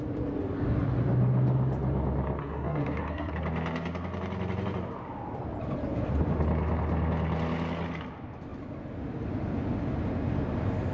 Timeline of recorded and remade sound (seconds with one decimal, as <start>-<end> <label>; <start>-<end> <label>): 0.0-2.4 recorded; 2.4-3.3 remade; 3.3-10.9 recorded